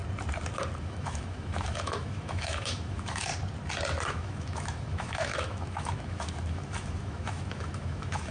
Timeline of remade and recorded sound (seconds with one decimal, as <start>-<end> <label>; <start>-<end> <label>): 0.0-0.8 recorded; 0.8-3.3 remade; 3.3-4.1 recorded; 4.1-8.3 remade